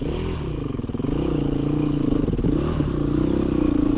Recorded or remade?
recorded